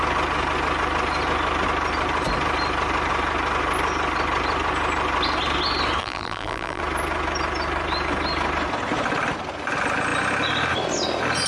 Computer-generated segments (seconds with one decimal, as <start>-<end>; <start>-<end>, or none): 6.0-6.8